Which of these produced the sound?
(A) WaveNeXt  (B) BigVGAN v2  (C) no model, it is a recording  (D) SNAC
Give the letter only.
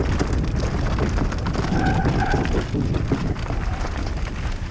C